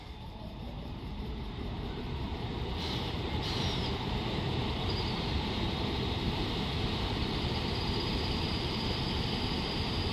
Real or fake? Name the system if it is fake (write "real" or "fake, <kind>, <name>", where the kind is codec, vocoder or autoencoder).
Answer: fake, vocoder, BigVGAN v2